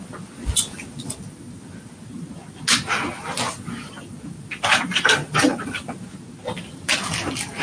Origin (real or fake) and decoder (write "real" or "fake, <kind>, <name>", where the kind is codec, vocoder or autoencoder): real